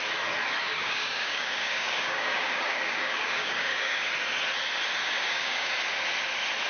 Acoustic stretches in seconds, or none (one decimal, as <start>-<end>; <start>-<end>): 0.0-0.7; 4.1-5.0; 5.7-6.7